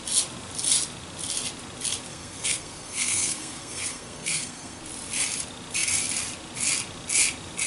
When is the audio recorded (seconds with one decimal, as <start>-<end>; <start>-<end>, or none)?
0.0-2.1; 4.8-7.7